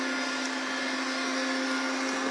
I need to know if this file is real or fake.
real